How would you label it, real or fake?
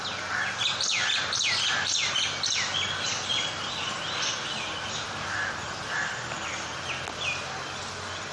real